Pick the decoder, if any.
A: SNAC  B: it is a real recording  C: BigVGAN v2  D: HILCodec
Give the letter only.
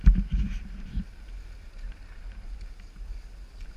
B